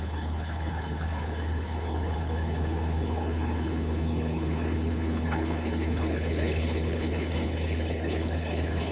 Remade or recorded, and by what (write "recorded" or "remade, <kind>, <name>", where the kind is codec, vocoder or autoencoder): remade, codec, HILCodec